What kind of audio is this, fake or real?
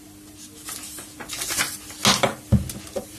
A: real